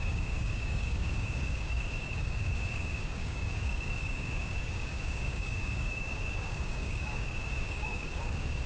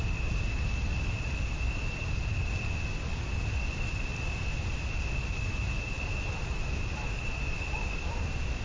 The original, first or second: second